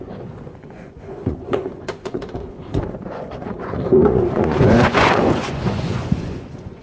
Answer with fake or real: fake